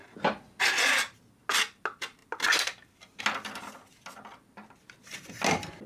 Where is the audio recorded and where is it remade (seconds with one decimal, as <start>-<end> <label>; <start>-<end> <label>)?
0.0-5.9 recorded